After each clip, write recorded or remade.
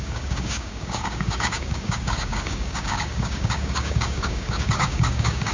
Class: remade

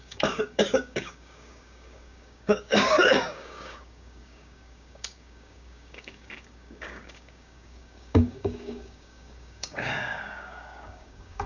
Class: remade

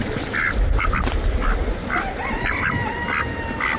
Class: recorded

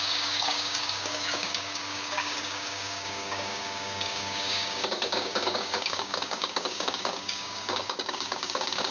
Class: remade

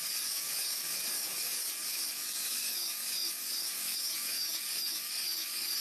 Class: remade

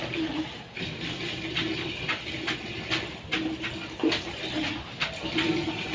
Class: recorded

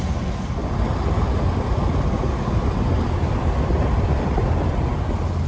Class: recorded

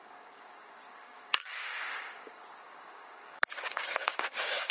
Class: remade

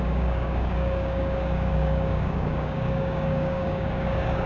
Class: remade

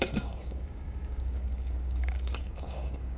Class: remade